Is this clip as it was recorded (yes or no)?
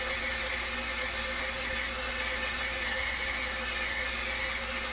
yes